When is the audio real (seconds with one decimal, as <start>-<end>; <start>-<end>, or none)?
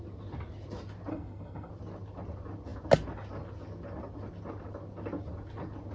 0.0-1.1; 1.7-5.9